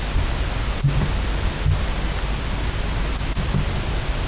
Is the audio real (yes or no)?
yes